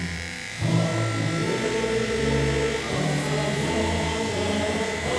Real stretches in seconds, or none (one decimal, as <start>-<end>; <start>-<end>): 0.9-2.9